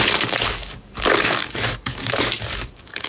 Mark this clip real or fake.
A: fake